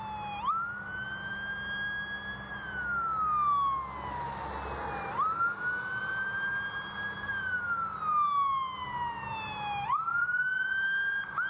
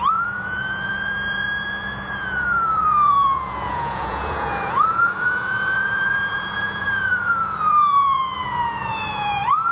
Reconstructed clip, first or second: second